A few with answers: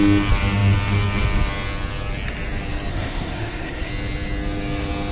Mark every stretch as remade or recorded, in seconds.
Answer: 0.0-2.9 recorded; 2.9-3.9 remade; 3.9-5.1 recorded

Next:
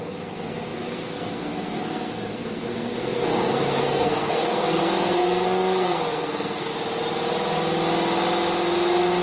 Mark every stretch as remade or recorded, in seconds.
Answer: 0.0-6.7 remade; 6.7-9.2 recorded

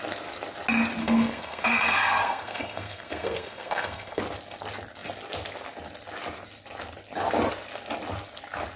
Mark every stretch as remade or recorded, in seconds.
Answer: 0.0-1.0 recorded; 1.0-4.2 remade; 4.2-8.8 recorded

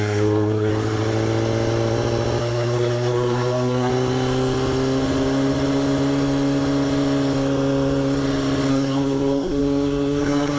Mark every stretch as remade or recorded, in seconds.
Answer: 0.0-0.7 remade; 0.7-2.4 recorded; 2.4-3.9 remade; 3.9-8.7 recorded; 8.7-10.6 remade

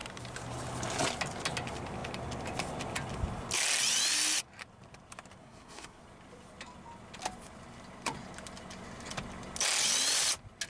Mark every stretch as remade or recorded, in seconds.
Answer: 0.0-5.4 recorded; 5.4-6.0 remade; 6.0-10.7 recorded

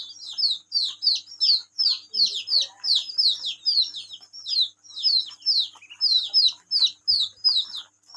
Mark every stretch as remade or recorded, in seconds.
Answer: 0.0-8.2 recorded

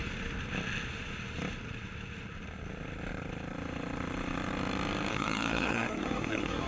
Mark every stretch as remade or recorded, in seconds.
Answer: 0.0-5.1 recorded; 5.1-6.7 remade